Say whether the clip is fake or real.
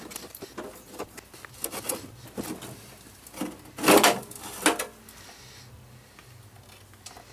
real